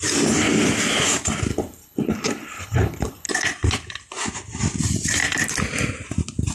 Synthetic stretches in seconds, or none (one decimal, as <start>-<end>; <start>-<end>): 1.5-3.3